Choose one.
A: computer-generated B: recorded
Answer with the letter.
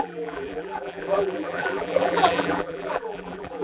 A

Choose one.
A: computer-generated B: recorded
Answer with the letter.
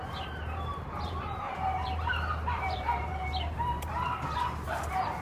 A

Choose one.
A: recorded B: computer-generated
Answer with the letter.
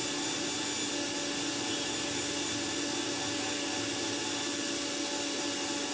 A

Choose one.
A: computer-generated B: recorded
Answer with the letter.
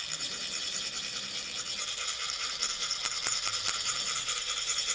A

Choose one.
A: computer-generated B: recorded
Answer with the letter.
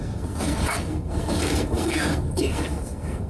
A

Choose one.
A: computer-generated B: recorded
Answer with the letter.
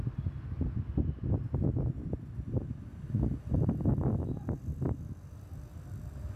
B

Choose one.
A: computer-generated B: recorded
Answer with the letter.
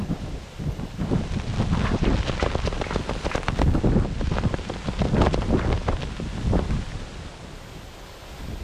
B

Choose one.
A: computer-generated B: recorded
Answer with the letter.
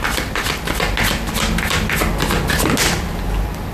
B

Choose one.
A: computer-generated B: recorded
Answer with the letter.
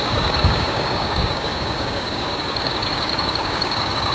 A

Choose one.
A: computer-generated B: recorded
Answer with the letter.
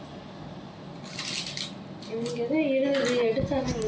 B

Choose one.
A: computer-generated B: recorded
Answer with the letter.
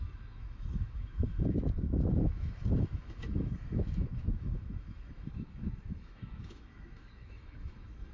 A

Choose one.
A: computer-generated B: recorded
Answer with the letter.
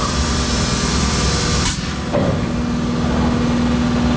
B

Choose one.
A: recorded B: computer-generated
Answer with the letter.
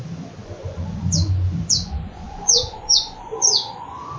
B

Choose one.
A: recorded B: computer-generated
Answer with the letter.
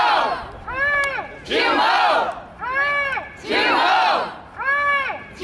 A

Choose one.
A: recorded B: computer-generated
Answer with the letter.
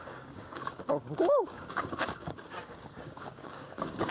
B